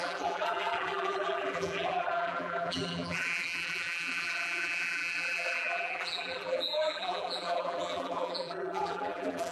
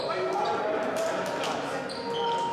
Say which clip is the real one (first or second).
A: second